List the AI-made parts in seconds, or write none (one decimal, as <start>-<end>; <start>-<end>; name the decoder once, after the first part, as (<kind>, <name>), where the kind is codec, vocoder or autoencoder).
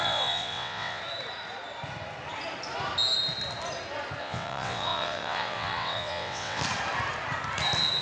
0.0-1.0 (vocoder, WaveNeXt); 4.2-6.6